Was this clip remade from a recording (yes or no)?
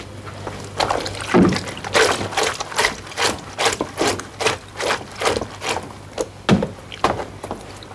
no